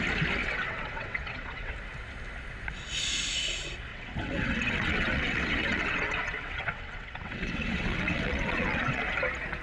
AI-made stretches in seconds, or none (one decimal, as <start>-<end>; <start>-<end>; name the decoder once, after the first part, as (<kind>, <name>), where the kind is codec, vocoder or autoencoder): 0.4-1.7 (vocoder, WaveNeXt); 3.9-9.0